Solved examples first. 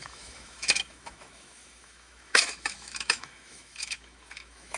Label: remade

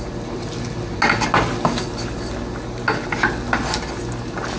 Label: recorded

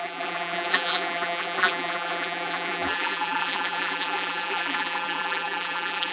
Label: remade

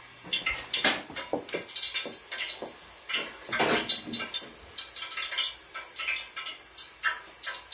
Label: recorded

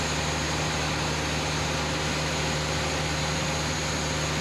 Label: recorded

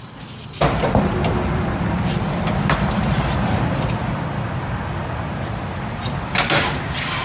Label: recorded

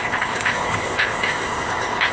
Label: remade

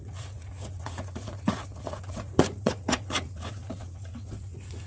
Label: remade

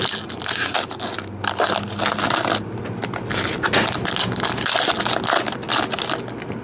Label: recorded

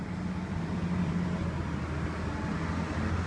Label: recorded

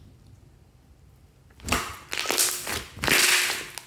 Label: recorded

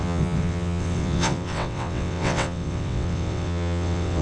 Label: remade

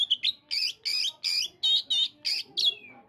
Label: recorded